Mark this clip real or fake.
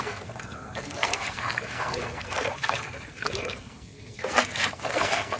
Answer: fake